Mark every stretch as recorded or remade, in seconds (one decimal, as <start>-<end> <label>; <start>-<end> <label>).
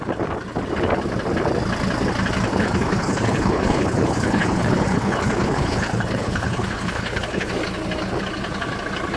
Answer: 0.0-2.5 recorded; 2.5-7.5 remade; 7.5-9.2 recorded